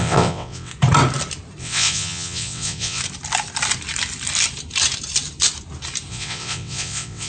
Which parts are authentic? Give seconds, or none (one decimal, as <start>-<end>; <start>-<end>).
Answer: 0.7-1.6; 3.0-6.1